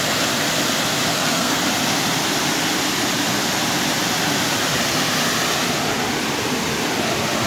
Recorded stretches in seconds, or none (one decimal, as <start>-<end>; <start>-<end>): 0.0-1.1; 1.6-7.5